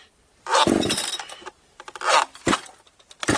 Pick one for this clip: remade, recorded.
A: recorded